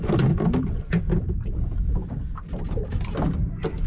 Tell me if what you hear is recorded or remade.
recorded